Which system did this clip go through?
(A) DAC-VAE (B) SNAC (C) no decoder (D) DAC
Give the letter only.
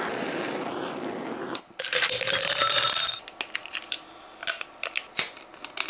C